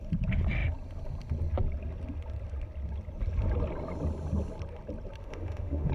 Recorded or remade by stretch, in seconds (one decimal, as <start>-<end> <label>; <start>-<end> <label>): 0.0-5.2 recorded; 5.2-5.9 remade